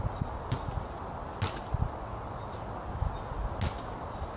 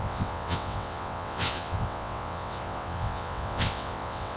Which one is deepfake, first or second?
second